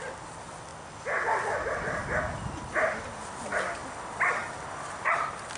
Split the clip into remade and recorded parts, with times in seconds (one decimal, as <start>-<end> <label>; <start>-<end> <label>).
0.0-5.6 recorded